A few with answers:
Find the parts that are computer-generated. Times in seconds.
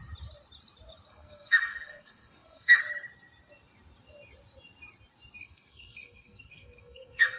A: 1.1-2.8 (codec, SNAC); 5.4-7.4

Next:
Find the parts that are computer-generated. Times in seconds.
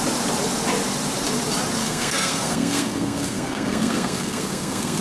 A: 1.8-5.0 (codec, SNAC)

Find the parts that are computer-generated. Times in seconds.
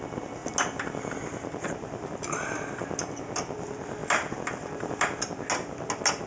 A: none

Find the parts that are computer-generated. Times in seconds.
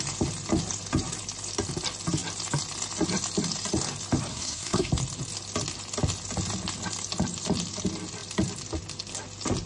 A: 4.3-4.9 (codec, SNAC)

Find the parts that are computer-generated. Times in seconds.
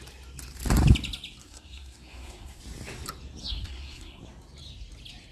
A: 1.4-2.6 (codec, SNAC); 3.4-4.2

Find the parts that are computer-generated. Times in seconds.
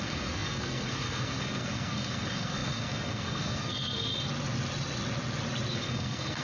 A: 0.0-4.1 (codec, SNAC); 5.7-6.4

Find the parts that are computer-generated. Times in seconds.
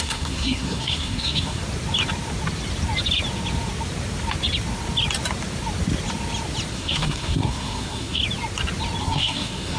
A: 0.0-1.6 (codec, SNAC); 6.7-8.2; 9.0-9.8